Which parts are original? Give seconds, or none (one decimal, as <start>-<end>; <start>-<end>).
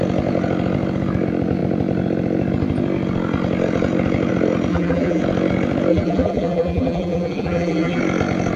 0.0-4.7; 5.2-5.9; 8.0-8.6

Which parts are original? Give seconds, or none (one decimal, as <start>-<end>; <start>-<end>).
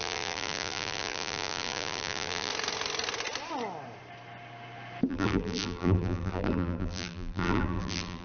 2.5-5.1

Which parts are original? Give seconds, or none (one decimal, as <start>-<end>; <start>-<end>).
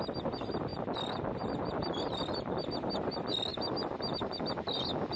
0.0-5.2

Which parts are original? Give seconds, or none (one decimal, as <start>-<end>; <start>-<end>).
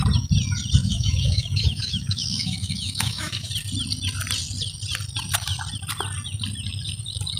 0.0-0.8; 3.5-7.4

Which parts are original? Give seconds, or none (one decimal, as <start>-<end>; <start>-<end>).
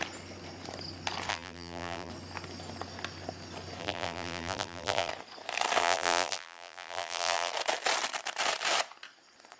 0.0-1.3; 2.1-3.8; 5.1-5.8; 7.5-9.6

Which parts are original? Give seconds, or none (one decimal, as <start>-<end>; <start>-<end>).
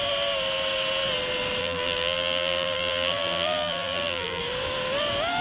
0.0-1.6; 4.4-5.4